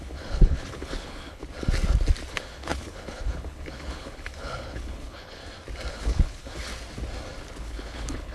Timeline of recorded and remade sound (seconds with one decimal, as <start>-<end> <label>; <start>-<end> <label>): 0.0-1.4 remade; 1.4-2.3 recorded; 2.3-5.4 remade; 5.4-5.9 recorded; 5.9-6.7 remade; 6.7-7.6 recorded; 7.6-8.3 remade

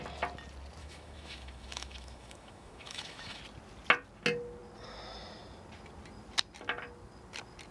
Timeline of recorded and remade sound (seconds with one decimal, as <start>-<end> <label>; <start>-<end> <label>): 0.0-0.8 recorded; 0.8-3.4 remade; 3.4-7.7 recorded

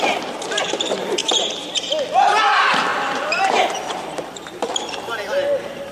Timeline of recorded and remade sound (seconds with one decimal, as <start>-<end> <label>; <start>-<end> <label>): 0.0-1.2 remade; 1.2-2.1 recorded; 2.1-5.9 remade

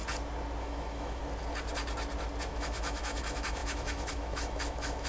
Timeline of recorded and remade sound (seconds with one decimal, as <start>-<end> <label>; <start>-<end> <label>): 0.0-0.6 recorded; 0.6-1.2 remade; 1.2-2.5 recorded; 2.5-5.1 remade

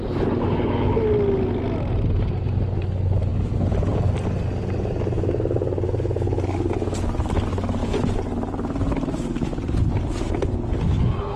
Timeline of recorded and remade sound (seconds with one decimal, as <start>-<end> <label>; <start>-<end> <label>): 0.0-11.4 recorded

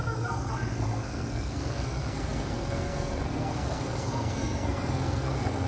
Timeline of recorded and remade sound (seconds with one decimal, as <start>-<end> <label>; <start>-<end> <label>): 0.0-5.7 remade